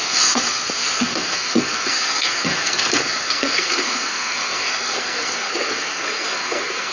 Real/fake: fake